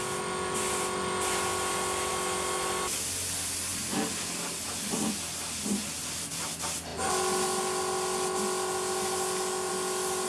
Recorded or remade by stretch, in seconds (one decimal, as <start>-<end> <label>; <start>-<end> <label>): 0.0-10.3 recorded